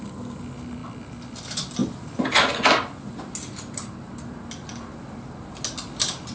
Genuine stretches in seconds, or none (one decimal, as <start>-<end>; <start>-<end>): 0.0-6.3